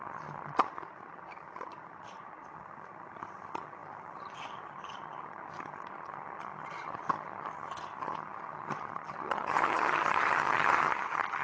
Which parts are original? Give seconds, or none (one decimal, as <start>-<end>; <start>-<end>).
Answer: none